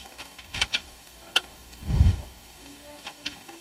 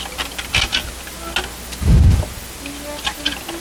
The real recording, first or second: second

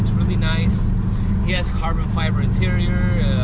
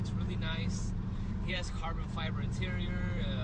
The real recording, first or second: first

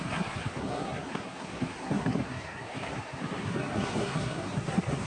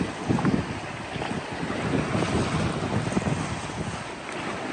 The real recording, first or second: second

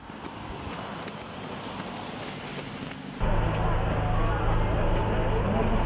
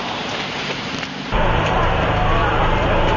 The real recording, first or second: first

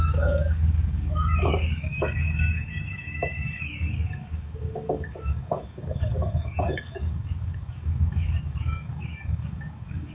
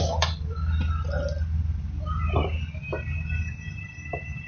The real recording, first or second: second